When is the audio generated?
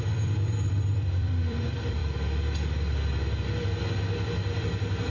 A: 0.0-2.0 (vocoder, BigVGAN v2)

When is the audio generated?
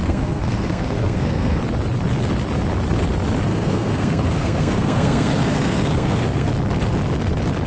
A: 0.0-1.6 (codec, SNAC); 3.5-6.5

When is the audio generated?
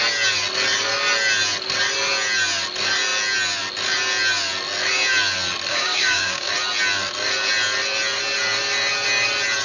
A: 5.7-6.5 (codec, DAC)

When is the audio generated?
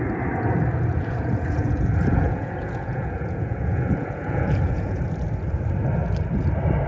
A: 0.9-5.0 (vocoder, Vocos)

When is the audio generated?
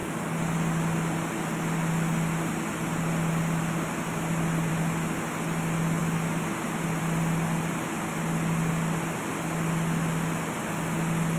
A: none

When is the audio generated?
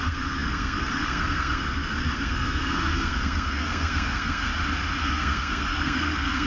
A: 0.0-4.5 (codec, SNAC); 5.0-6.5